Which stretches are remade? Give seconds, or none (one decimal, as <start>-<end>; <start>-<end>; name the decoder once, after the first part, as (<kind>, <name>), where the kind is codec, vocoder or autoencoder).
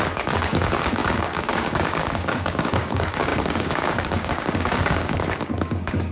0.0-6.1 (codec, DAC)